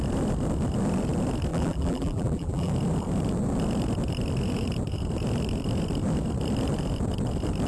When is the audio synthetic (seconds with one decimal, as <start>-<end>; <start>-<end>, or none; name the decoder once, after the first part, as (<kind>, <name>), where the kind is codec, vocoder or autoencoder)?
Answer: 1.5-2.7 (vocoder, BigVGAN v2)